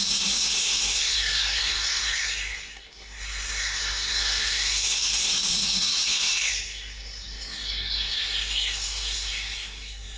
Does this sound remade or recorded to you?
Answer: remade